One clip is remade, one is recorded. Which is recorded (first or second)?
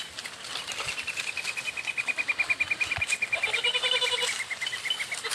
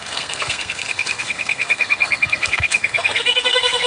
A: first